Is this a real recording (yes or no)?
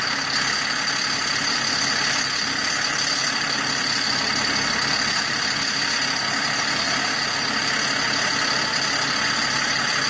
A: yes